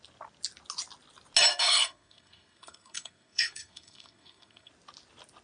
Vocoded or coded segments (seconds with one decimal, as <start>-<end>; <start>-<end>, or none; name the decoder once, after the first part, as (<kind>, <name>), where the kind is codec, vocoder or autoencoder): 1.5-4.7 (codec, SNAC)